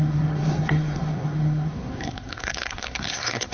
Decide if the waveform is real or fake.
fake